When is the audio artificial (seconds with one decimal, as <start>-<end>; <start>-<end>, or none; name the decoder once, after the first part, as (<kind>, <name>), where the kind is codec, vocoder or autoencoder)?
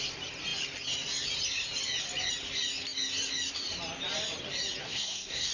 4.8-5.5 (codec, SNAC)